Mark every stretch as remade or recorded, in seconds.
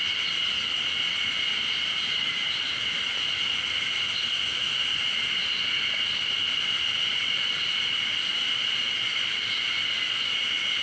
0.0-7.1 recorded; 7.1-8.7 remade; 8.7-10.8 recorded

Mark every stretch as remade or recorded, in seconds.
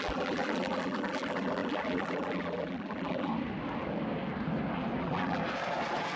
0.0-3.3 remade; 3.3-5.0 recorded; 5.0-5.4 remade; 5.4-6.2 recorded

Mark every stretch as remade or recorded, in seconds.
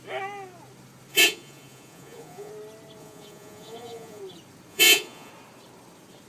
0.0-1.1 recorded; 1.1-2.5 remade; 2.5-3.0 recorded; 3.0-4.2 remade; 4.2-4.7 recorded; 4.7-5.3 remade; 5.3-6.3 recorded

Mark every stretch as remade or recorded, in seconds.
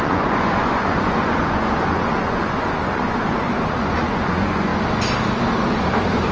0.0-4.7 remade; 4.7-6.3 recorded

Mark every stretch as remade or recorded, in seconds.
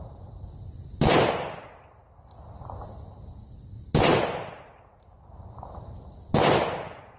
0.0-7.2 recorded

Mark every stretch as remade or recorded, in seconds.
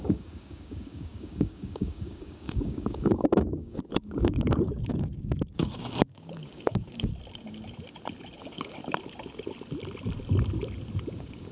0.0-7.1 remade; 7.1-8.4 recorded; 8.4-8.8 remade; 8.8-11.1 recorded; 11.1-11.5 remade